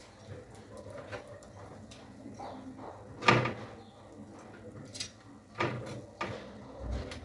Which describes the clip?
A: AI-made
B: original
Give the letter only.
B